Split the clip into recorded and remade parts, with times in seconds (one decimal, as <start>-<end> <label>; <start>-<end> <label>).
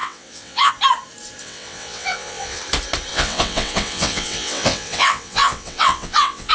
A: 0.0-0.7 remade; 0.7-1.4 recorded; 1.4-2.6 remade; 2.6-3.1 recorded; 3.1-6.5 remade